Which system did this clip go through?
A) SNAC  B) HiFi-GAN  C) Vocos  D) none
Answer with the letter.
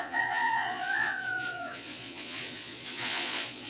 C